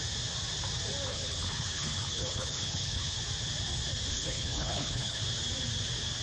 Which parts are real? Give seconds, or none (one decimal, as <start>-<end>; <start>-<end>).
0.0-1.1; 3.2-4.1; 5.2-6.2